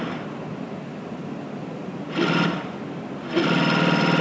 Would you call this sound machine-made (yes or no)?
no